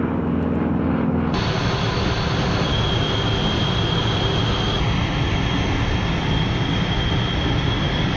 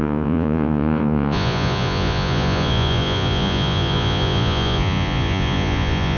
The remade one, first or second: second